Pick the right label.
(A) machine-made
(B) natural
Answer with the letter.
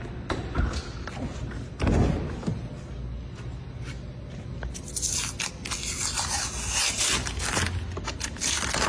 B